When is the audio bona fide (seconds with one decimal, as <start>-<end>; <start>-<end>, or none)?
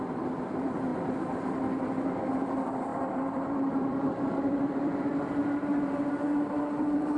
0.9-1.8; 5.1-6.8